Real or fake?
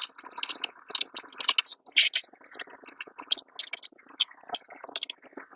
real